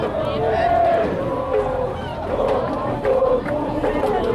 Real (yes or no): no